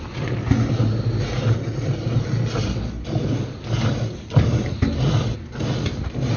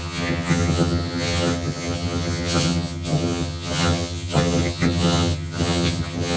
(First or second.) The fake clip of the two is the second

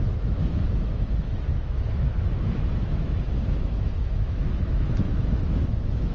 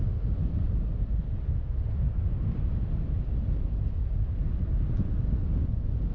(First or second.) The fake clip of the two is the first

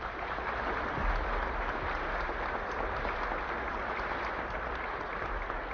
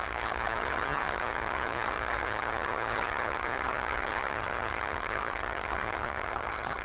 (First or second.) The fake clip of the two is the second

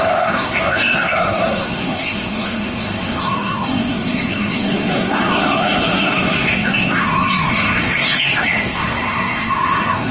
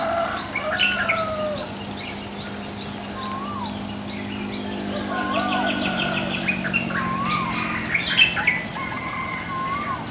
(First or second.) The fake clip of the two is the first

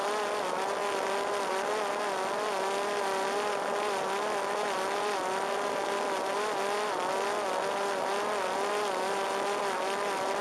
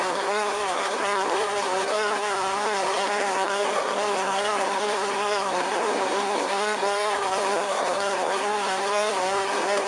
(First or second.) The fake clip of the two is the second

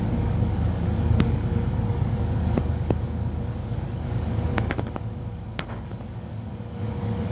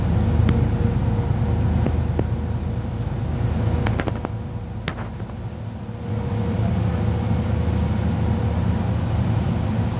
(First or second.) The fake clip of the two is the first